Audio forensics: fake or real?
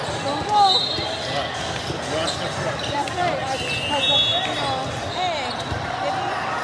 real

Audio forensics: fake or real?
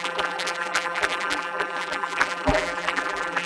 fake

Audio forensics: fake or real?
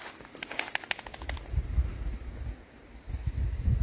real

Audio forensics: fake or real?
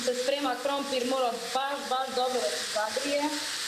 real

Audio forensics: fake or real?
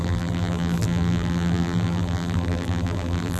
fake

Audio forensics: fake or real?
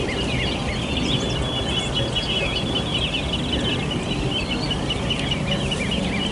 real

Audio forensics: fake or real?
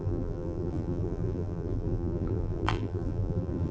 fake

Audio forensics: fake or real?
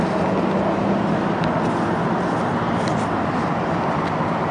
real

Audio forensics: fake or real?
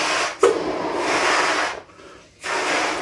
real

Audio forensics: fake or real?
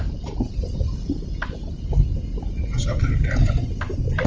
fake